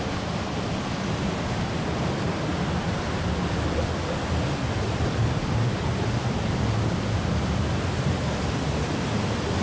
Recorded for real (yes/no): yes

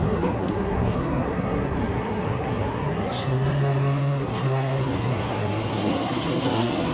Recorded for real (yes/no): no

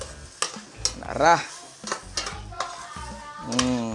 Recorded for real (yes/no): yes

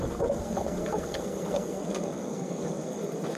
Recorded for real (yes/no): no